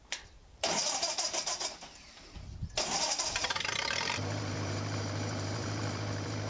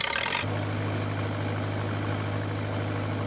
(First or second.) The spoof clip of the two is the first